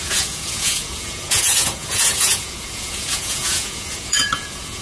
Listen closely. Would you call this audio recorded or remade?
remade